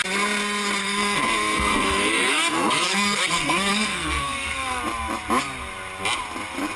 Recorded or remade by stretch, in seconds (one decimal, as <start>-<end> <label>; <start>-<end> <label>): 0.0-0.8 recorded; 0.8-4.8 remade; 4.8-6.8 recorded